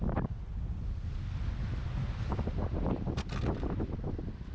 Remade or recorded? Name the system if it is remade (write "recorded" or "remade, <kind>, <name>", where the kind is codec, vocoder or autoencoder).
recorded